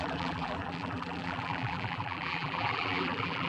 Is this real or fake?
fake